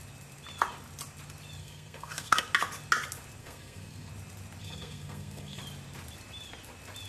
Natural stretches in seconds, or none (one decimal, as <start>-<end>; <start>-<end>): 0.0-1.6; 2.4-3.4; 4.1-4.6; 5.6-7.1